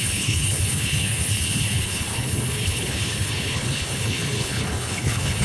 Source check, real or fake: fake